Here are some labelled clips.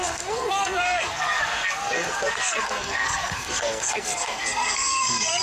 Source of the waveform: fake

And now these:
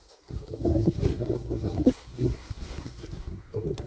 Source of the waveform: fake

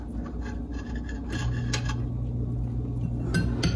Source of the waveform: real